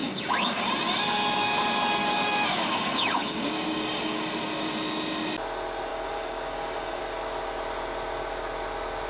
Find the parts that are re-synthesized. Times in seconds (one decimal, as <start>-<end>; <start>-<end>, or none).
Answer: 0.0-0.7; 2.0-4.2; 5.9-7.0